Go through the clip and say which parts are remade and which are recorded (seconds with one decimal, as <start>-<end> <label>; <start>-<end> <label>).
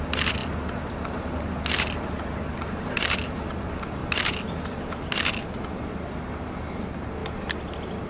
0.0-8.1 recorded